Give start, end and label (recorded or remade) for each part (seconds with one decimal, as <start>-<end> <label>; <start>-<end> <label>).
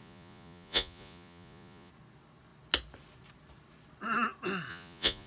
0.0-1.9 remade; 1.9-4.7 recorded; 4.7-5.3 remade